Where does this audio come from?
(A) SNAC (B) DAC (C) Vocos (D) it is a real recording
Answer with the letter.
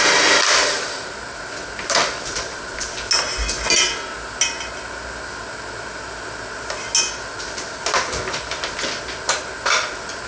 D